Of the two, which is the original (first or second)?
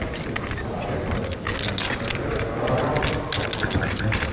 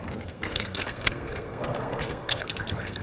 first